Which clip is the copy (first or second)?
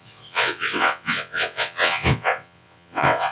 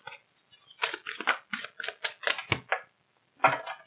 first